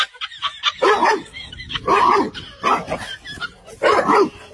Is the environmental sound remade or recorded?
recorded